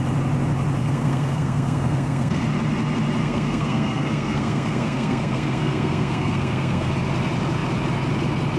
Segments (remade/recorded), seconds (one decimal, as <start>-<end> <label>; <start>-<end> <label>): 0.0-0.8 recorded; 0.8-2.4 remade; 2.4-3.2 recorded; 3.2-6.9 remade; 6.9-8.6 recorded